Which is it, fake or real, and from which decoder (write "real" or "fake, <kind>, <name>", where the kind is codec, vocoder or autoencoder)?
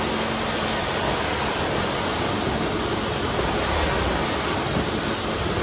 real